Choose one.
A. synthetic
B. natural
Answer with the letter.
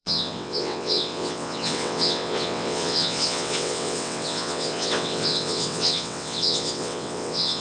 A